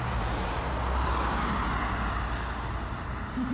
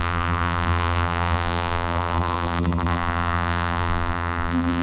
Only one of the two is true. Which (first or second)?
first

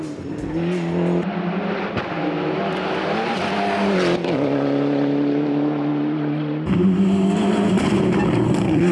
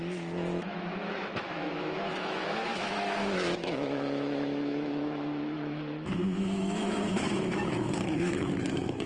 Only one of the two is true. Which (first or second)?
first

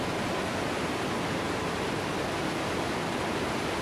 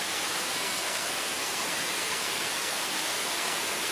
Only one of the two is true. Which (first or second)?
first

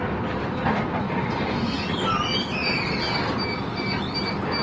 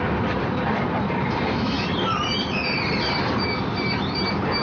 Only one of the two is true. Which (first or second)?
first